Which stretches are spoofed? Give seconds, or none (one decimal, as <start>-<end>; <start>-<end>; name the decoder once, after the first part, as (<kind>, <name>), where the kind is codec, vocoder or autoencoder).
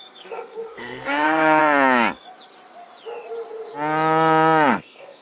0.0-1.6 (codec, SNAC); 4.7-5.2